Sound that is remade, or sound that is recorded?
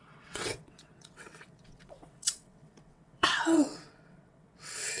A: remade